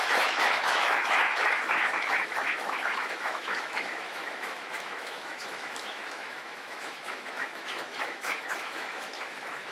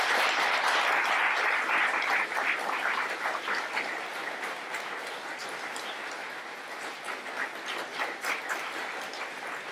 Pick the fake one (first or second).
first